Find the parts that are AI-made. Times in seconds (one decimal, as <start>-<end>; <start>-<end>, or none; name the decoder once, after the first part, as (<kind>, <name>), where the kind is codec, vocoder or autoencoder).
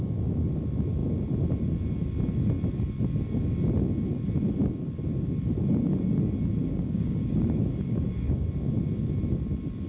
6.6-8.4 (codec, DAC)